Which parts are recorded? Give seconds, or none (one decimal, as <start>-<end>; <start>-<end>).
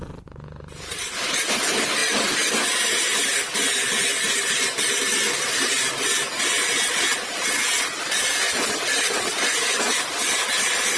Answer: 0.0-2.0; 5.9-11.0